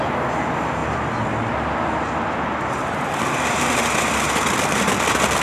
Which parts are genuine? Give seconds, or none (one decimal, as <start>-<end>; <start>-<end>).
0.0-5.4